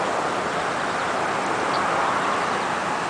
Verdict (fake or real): real